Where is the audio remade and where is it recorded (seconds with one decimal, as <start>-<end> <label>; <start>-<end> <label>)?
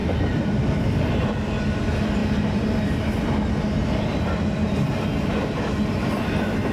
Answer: 0.0-1.1 remade; 1.1-6.7 recorded